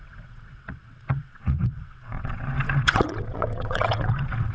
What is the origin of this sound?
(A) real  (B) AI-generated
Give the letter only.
B